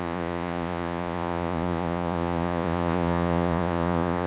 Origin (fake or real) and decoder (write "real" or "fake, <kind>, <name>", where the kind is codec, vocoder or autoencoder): fake, vocoder, Vocos